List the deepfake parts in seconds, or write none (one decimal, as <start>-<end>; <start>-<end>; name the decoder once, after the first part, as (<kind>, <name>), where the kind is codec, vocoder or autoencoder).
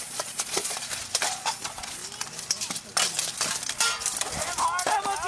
0.0-0.8 (vocoder, Vocos); 1.3-2.0